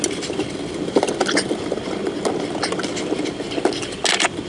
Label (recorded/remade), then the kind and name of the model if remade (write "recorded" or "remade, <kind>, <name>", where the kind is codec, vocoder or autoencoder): recorded